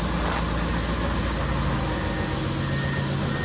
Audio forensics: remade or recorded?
recorded